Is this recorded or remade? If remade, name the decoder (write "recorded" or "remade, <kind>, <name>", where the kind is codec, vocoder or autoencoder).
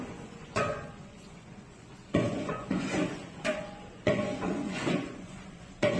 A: remade, vocoder, Vocos